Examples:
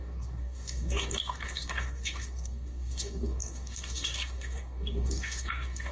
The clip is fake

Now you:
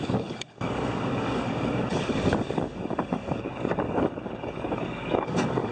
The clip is fake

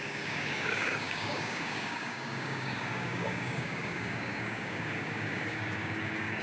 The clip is fake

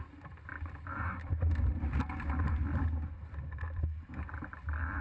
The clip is real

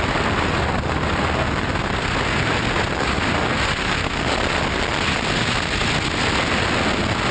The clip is real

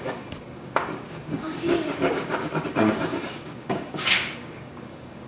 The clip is fake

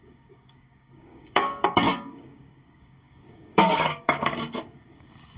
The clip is fake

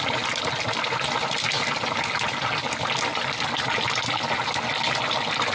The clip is real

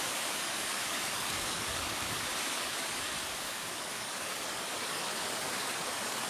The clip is fake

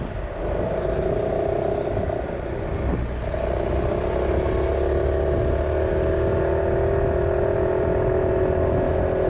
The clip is real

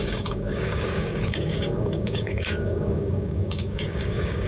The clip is fake